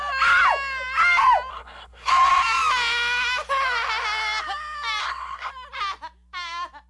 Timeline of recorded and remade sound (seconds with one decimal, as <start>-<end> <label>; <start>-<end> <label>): 0.0-1.5 recorded; 1.5-2.1 remade; 2.1-5.0 recorded; 5.0-5.5 remade; 5.5-6.9 recorded